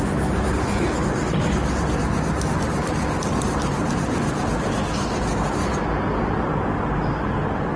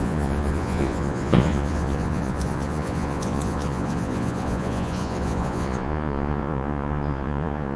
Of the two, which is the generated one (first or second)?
second